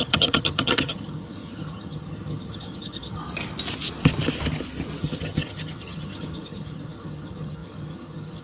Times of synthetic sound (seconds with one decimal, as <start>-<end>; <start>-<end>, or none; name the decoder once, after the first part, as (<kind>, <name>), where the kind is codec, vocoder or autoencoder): 0.0-3.2 (vocoder, HiFi-GAN); 5.0-8.4